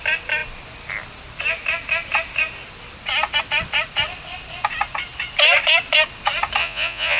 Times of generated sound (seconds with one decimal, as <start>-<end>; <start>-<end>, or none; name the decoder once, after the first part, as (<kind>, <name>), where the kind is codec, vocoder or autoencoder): 6.6-7.2 (vocoder, Vocos)